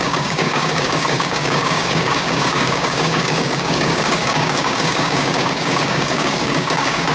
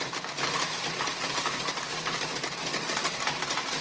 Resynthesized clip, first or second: first